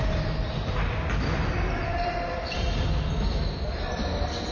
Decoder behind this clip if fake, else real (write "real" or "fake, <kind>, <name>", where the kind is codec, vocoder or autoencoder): real